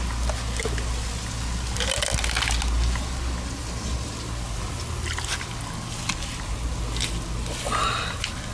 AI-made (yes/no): no